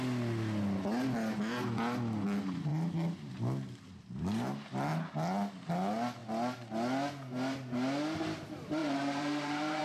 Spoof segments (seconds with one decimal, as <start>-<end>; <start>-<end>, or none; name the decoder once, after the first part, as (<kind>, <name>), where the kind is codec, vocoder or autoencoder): 2.7-3.3 (vocoder, BigVGAN v2); 8.8-9.8